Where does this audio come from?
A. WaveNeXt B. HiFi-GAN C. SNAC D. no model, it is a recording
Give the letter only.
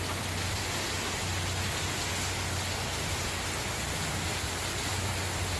D